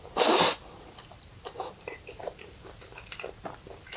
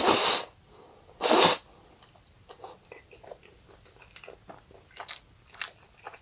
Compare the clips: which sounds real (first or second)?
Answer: second